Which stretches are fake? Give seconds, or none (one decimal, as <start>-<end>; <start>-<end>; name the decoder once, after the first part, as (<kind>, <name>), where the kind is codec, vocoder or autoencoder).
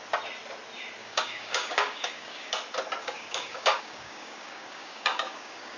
1.0-2.5 (codec, DAC); 3.0-5.8